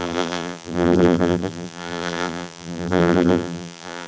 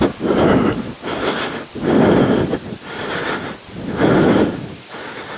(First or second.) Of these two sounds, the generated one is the first